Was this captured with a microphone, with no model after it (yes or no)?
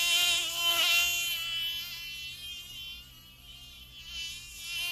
yes